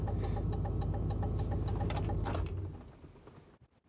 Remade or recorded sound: recorded